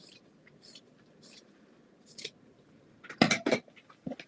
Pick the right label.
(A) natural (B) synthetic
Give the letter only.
A